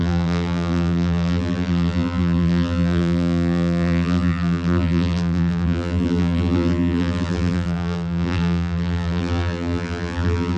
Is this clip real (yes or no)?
no